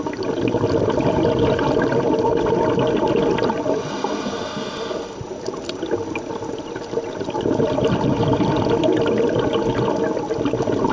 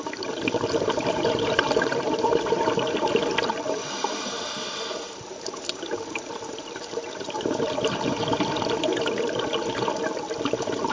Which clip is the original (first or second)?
first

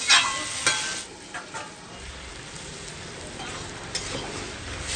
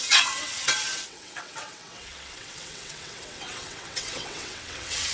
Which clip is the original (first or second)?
first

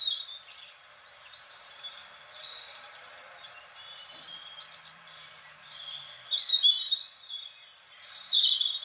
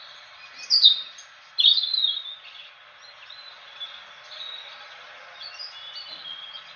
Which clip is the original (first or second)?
second